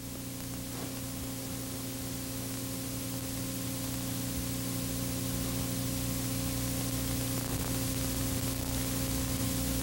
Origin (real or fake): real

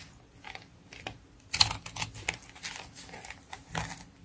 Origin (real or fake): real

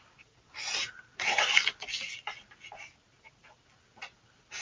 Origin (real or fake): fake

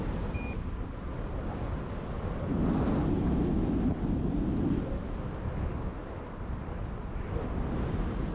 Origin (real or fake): real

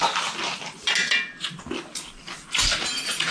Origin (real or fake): real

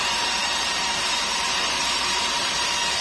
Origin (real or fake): fake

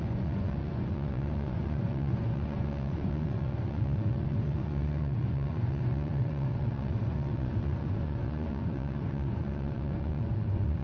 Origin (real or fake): fake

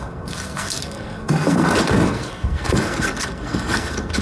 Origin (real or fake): fake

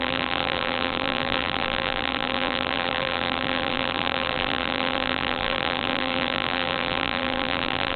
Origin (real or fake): fake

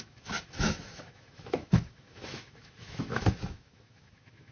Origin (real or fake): fake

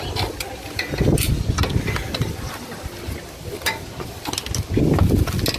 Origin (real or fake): real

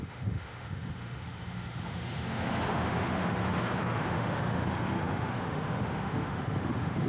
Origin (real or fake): fake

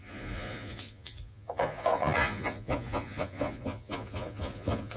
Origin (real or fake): fake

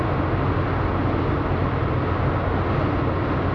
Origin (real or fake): real